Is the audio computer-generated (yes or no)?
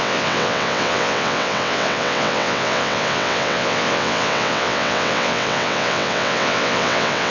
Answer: yes